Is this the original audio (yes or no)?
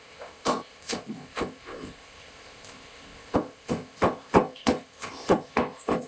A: no